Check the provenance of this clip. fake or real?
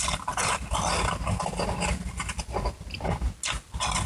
real